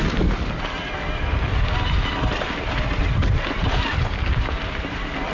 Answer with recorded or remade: recorded